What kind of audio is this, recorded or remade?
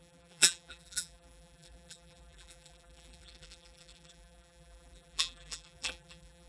remade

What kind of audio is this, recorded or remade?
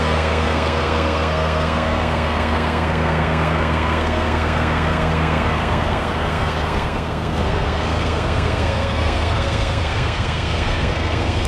remade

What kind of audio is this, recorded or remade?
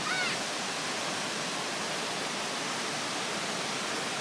recorded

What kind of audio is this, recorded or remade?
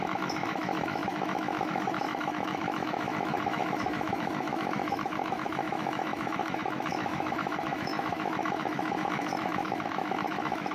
remade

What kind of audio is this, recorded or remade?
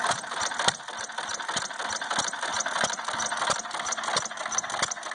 recorded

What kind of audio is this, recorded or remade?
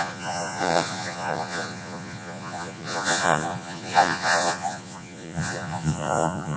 remade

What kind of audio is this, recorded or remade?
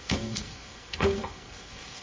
remade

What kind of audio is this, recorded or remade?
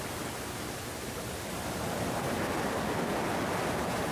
recorded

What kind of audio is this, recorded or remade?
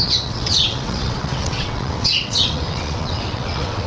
remade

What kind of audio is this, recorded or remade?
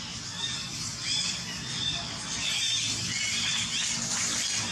recorded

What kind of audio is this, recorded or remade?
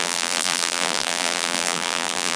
remade